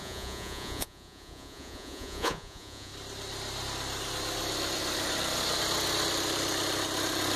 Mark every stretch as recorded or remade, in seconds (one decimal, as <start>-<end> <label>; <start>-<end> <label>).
0.0-2.9 remade; 2.9-7.4 recorded